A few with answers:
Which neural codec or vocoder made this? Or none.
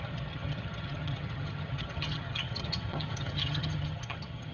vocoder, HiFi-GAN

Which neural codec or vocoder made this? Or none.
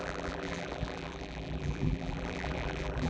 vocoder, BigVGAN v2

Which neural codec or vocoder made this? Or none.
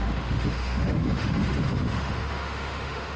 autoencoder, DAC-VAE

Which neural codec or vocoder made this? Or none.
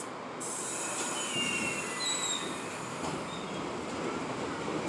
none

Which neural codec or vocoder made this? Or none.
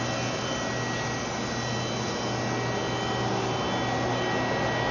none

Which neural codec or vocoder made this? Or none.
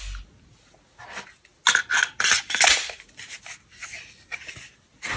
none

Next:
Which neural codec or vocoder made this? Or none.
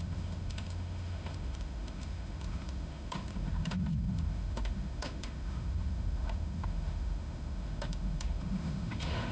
autoencoder, DAC-VAE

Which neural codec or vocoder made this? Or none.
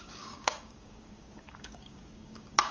codec, DAC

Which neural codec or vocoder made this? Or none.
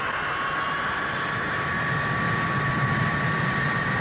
none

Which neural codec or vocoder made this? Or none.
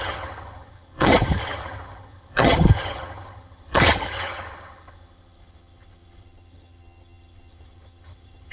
vocoder, HiFi-GAN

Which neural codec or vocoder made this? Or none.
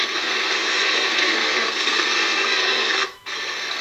codec, SNAC